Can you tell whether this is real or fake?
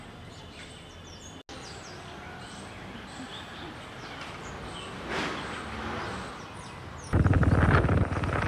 real